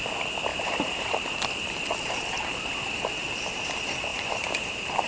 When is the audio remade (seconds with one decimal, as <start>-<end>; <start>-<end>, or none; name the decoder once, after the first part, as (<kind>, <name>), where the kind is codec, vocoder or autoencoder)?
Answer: 0.5-1.4 (vocoder, BigVGAN v2); 4.1-5.1